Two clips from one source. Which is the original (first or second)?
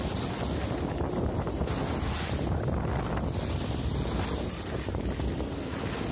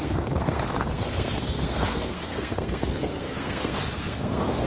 first